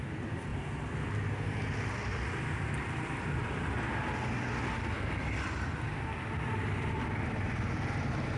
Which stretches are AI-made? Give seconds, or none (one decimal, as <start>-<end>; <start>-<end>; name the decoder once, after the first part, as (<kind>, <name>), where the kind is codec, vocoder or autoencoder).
none